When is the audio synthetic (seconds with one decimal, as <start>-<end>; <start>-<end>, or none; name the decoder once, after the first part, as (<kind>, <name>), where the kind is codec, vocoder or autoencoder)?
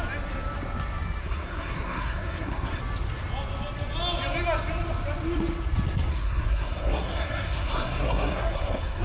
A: 1.2-2.8 (codec, SNAC); 6.1-9.0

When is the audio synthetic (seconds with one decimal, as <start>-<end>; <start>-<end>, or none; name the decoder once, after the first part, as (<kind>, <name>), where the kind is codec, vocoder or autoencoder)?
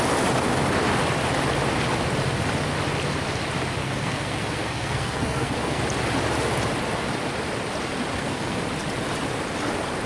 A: 3.8-5.8 (codec, SNAC); 8.1-8.6